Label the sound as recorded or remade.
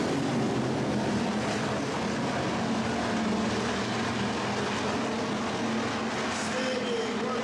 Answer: recorded